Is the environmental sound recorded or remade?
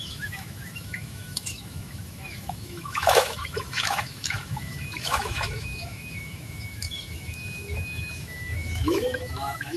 remade